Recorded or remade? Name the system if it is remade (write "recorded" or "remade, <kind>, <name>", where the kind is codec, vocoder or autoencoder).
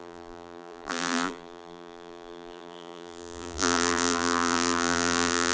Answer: remade, vocoder, BigVGAN v2